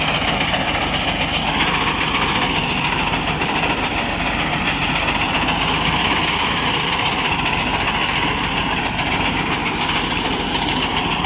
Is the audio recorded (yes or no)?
yes